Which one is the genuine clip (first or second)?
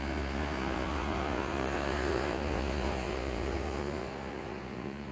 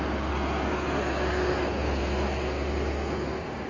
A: second